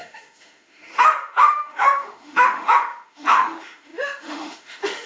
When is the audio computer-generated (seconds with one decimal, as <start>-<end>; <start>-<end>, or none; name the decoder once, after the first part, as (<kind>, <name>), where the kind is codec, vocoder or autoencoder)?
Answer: 0.0-5.1 (autoencoder, DAC-VAE)